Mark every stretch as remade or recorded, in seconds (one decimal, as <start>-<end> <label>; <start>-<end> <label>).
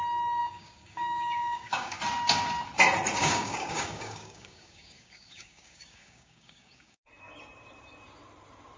0.0-0.4 recorded; 0.4-2.0 remade; 2.0-3.2 recorded; 3.2-7.1 remade; 7.1-8.8 recorded